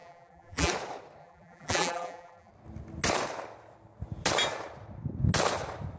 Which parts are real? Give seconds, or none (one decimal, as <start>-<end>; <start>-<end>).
0.7-1.2; 2.5-6.0